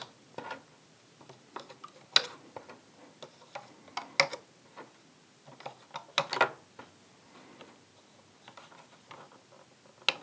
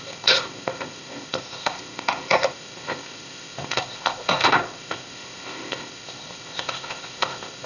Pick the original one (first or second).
first